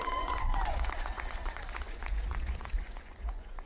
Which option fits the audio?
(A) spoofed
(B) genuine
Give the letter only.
A